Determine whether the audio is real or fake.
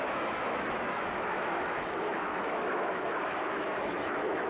fake